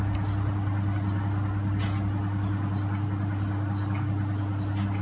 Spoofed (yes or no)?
no